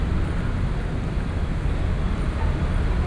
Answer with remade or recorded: recorded